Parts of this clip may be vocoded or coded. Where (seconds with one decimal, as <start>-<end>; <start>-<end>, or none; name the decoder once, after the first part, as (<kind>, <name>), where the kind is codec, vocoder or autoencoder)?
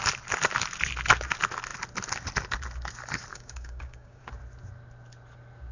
3.3-4.2 (codec, DAC)